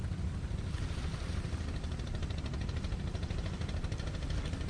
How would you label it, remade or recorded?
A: recorded